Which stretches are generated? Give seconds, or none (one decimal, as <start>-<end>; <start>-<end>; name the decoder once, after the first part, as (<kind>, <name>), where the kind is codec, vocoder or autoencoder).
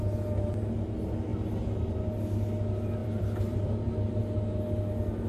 3.0-4.2 (vocoder, BigVGAN v2)